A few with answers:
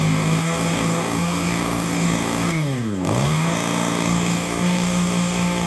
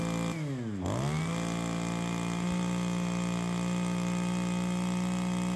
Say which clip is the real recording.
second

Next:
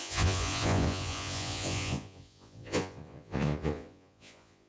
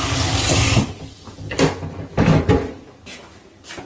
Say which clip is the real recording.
second